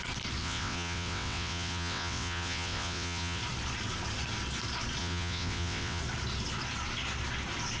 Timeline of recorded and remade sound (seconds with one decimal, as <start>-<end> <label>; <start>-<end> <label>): 0.0-0.4 recorded; 0.4-3.4 remade; 3.4-5.0 recorded; 5.0-6.0 remade; 6.0-7.8 recorded